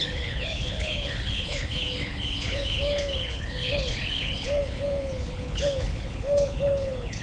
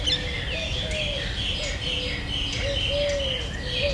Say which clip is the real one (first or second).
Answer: second